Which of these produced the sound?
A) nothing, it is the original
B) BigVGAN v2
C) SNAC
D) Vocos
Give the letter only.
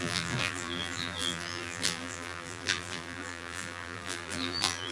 B